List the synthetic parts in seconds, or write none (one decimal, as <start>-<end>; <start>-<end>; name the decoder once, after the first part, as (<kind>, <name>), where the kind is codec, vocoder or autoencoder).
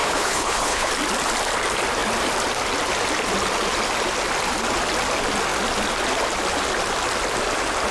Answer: 0.0-0.9 (codec, HILCodec)